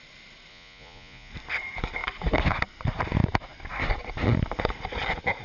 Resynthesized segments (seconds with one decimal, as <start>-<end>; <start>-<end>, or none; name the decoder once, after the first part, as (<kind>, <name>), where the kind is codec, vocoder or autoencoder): 0.5-1.3 (vocoder, Vocos)